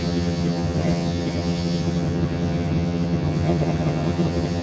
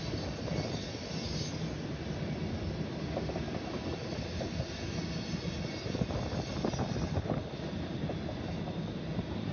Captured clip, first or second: second